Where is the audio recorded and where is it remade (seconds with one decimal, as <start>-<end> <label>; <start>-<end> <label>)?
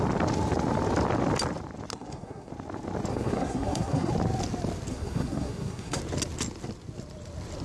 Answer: 0.0-1.9 recorded; 1.9-2.5 remade; 2.5-3.1 recorded; 3.1-4.1 remade; 4.1-4.9 recorded; 4.9-6.0 remade; 6.0-7.6 recorded